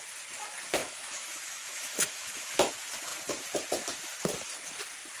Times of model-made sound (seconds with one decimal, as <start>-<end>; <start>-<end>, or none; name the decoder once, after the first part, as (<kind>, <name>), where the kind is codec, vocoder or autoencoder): 0.8-2.7 (autoencoder, DAC-VAE)